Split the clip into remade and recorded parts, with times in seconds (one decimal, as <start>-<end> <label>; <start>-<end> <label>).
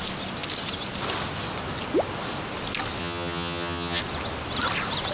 0.0-3.0 recorded; 3.0-4.0 remade; 4.0-5.1 recorded